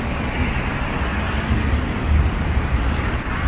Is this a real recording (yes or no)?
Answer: yes